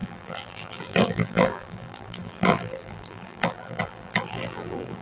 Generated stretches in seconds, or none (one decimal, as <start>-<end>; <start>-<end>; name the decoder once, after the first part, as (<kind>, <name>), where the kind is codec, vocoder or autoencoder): 0.0-5.0 (vocoder, BigVGAN v2)